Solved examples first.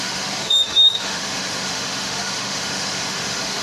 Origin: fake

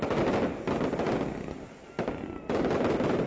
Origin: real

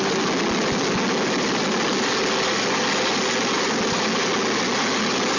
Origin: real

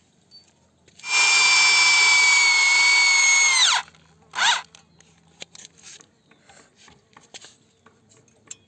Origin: real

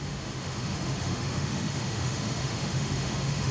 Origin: fake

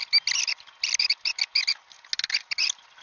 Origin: real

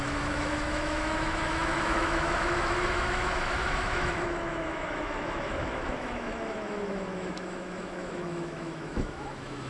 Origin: fake